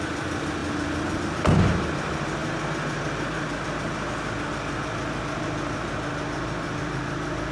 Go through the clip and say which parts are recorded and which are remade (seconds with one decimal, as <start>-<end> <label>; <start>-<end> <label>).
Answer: 0.0-7.5 recorded